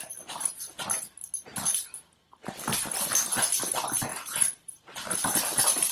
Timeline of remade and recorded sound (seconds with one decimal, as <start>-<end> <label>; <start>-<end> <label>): 0.0-4.1 recorded; 4.1-5.9 remade